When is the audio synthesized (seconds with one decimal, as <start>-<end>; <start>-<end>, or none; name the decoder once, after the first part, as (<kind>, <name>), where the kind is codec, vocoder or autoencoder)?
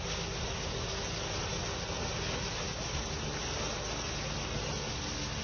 none